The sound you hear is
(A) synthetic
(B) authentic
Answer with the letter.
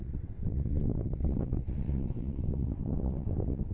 A